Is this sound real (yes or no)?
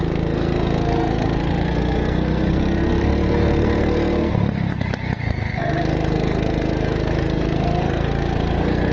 no